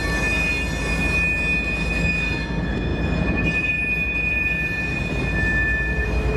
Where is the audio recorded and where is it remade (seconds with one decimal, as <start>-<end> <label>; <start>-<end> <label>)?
0.0-2.9 recorded; 2.9-3.7 remade; 3.7-6.4 recorded